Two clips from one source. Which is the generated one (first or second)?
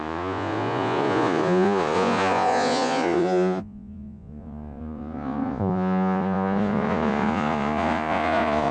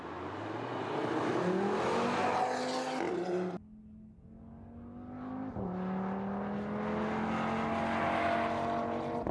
first